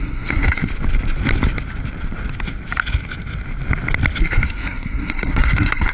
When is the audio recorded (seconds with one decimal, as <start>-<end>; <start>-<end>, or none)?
0.7-4.2

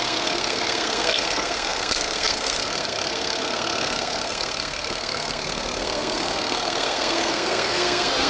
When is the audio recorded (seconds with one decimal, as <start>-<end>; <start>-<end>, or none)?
none